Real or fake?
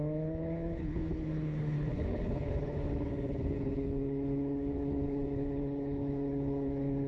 fake